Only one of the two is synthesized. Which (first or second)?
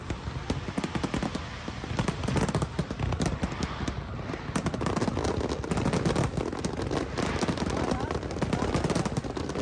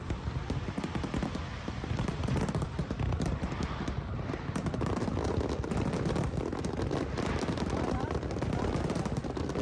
second